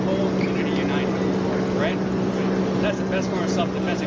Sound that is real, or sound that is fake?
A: real